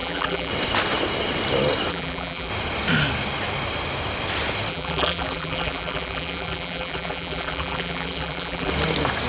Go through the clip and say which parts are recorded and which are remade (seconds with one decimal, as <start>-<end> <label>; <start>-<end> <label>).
0.0-0.5 remade; 0.5-1.9 recorded; 1.9-2.5 remade; 2.5-4.7 recorded; 4.7-8.7 remade; 8.7-9.3 recorded